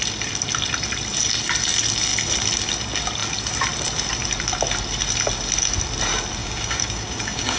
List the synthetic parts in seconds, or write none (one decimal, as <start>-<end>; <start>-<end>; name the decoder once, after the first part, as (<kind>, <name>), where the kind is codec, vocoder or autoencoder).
6.4-7.6 (codec, DAC)